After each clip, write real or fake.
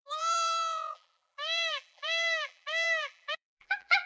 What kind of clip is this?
fake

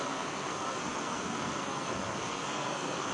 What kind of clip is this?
fake